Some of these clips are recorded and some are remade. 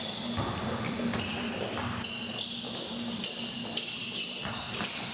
remade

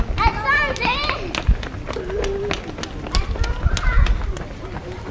recorded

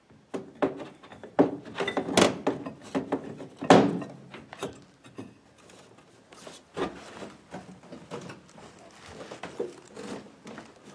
recorded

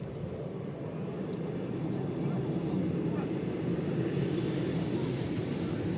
recorded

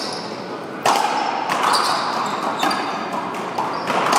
recorded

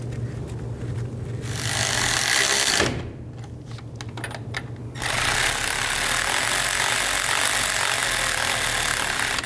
recorded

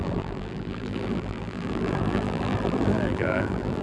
remade